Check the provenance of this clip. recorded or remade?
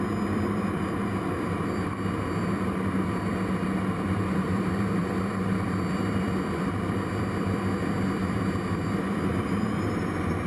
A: remade